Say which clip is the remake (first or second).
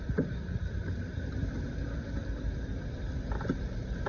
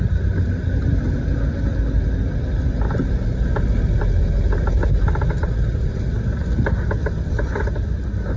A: first